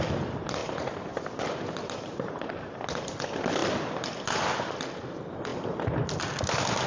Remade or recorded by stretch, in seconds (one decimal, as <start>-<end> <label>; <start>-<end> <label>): 0.0-0.6 recorded; 0.6-2.5 remade; 2.5-6.9 recorded